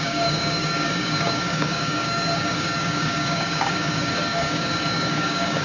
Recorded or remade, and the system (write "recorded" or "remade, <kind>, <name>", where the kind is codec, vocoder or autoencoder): remade, codec, DAC